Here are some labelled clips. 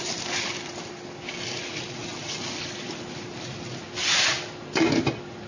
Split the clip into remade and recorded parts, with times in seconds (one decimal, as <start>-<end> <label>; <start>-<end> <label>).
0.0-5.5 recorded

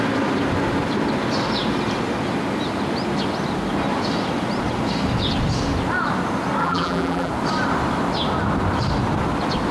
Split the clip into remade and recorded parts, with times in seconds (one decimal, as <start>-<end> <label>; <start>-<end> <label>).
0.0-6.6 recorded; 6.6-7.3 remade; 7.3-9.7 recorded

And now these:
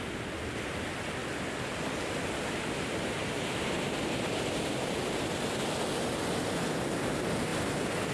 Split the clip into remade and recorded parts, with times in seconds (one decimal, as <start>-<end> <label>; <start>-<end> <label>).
0.0-1.2 recorded; 1.2-5.7 remade; 5.7-8.1 recorded

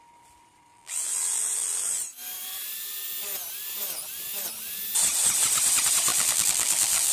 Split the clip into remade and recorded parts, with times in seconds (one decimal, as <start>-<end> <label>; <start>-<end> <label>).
0.0-0.7 recorded; 0.7-2.0 remade; 2.0-6.1 recorded; 6.1-7.1 remade